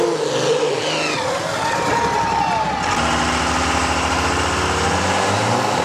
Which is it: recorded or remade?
recorded